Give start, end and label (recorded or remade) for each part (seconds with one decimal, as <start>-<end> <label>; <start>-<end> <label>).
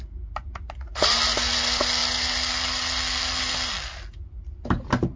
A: 0.0-5.2 recorded